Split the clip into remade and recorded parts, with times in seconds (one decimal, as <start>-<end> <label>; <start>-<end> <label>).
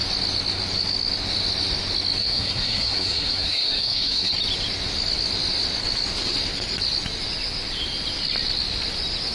0.0-2.2 recorded; 2.2-4.3 remade; 4.3-9.3 recorded